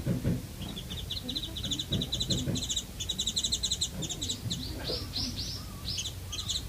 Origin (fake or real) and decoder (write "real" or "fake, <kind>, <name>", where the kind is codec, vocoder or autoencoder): real